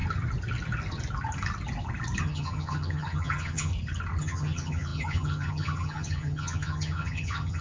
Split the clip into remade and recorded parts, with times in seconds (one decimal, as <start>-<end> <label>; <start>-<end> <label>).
0.0-2.2 recorded; 2.2-3.7 remade; 3.7-4.2 recorded; 4.2-7.6 remade